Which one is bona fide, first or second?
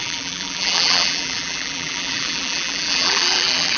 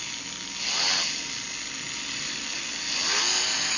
second